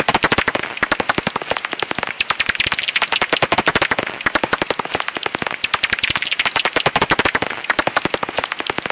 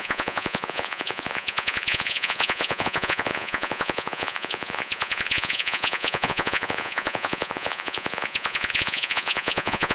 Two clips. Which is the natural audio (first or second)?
first